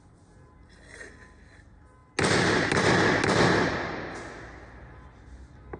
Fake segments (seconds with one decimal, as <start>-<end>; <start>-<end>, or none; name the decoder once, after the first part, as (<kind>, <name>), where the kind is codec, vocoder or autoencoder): none